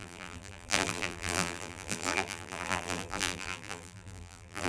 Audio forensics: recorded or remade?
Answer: remade